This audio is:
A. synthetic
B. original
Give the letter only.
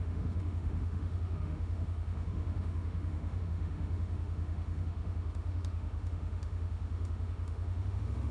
A